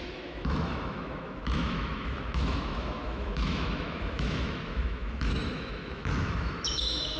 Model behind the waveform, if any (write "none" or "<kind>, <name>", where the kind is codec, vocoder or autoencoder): autoencoder, DAC-VAE